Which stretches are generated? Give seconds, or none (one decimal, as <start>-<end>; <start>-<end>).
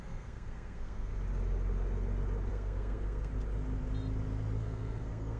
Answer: 0.0-1.1; 2.5-3.3; 4.6-5.4